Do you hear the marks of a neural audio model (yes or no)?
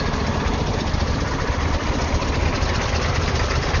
no